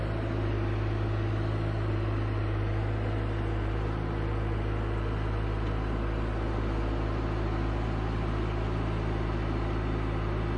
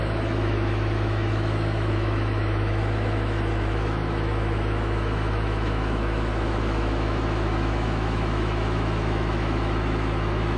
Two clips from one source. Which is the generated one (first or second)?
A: second